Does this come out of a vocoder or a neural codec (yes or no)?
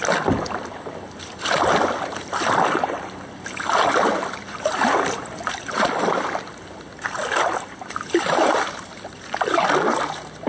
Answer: no